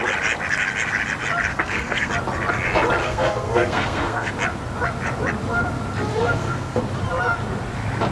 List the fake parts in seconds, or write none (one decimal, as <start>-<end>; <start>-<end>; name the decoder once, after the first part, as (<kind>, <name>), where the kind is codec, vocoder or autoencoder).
1.5-2.1 (codec, SNAC); 3.0-4.3; 6.1-6.8